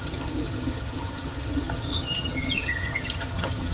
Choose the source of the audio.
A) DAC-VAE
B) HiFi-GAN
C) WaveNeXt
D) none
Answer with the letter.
B